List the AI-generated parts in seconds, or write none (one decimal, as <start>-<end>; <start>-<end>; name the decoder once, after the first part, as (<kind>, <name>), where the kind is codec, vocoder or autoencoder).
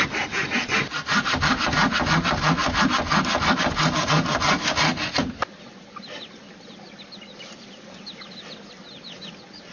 none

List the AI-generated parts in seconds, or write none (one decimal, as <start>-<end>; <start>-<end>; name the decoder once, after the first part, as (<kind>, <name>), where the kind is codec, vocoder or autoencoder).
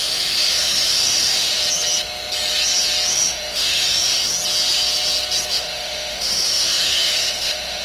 0.0-1.6 (autoencoder, DAC-VAE); 3.1-4.3; 5.5-7.8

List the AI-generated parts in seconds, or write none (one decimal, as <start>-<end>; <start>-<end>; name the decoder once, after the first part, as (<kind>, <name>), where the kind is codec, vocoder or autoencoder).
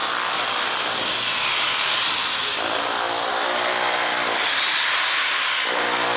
none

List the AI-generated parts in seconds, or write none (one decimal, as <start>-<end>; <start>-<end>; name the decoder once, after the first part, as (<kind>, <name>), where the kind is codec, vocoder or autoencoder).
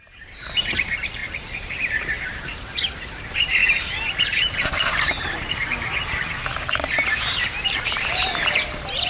0.0-9.1 (vocoder, BigVGAN v2)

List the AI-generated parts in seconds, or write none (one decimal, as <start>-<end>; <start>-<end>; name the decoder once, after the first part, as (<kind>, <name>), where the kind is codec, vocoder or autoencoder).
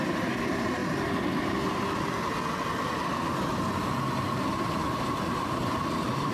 0.0-0.8 (vocoder, BigVGAN v2); 4.2-6.3